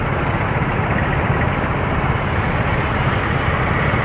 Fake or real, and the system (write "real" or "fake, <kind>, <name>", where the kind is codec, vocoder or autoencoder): real